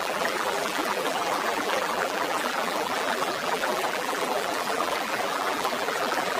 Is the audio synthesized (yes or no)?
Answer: yes